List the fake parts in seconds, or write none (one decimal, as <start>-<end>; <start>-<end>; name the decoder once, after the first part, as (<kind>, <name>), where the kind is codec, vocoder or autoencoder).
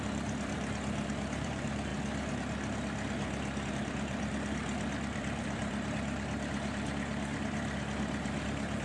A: 0.0-1.9 (vocoder, BigVGAN v2); 3.7-8.8